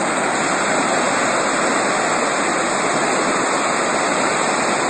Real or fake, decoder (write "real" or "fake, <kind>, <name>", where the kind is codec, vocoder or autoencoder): real